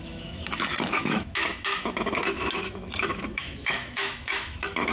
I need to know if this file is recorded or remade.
remade